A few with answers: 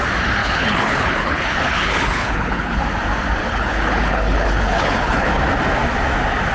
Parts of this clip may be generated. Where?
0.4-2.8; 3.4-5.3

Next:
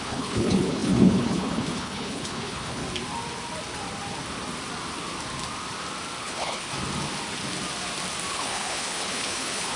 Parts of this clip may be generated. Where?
0.0-2.8; 6.2-6.7; 8.3-9.8

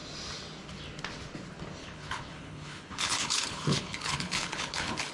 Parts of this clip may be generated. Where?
1.8-5.1

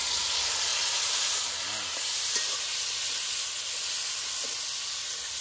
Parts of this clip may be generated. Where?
none